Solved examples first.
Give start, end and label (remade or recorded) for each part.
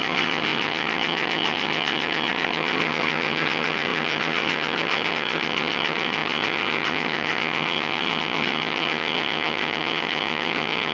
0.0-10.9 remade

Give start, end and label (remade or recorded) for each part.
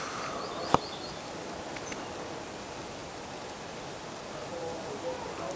0.0-5.6 recorded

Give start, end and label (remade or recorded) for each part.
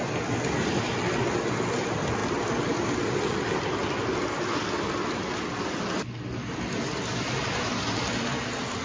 0.0-8.8 recorded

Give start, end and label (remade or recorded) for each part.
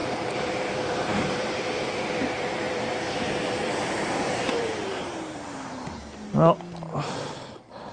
0.0-7.9 remade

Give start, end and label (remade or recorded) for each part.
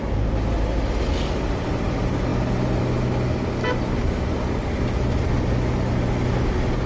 0.0-6.9 recorded